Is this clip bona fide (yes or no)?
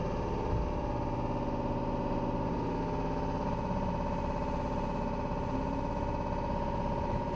yes